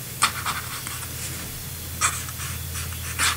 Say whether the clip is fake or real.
real